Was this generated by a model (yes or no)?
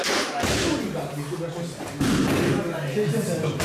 no